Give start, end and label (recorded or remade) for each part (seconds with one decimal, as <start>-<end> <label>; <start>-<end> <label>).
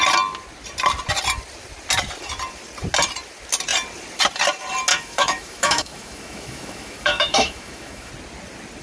0.0-4.9 recorded; 4.9-8.1 remade; 8.1-8.8 recorded